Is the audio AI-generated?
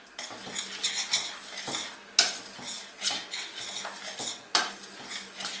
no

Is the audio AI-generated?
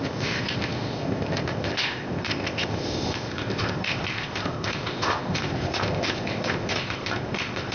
yes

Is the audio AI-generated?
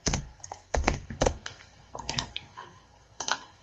yes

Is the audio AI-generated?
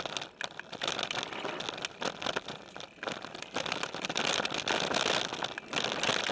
no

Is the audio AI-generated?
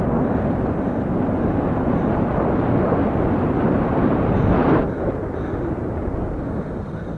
no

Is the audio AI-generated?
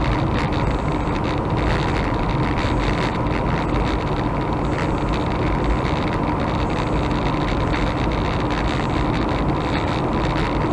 no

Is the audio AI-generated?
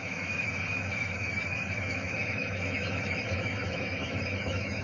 yes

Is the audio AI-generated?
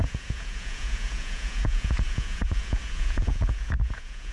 yes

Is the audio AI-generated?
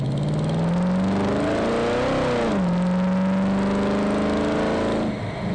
no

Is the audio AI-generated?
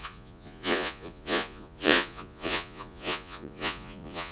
yes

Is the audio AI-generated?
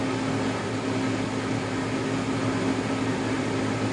no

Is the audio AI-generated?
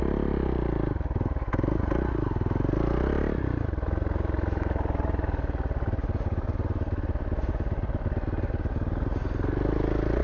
no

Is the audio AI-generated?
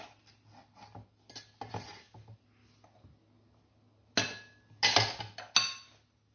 no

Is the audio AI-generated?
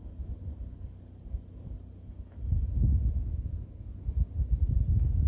no